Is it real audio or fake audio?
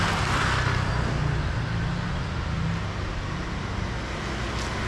real